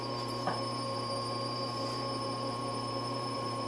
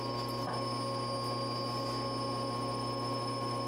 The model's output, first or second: first